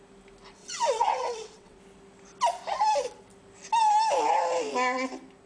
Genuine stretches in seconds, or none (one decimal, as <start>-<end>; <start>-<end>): 0.0-0.6; 1.8-5.5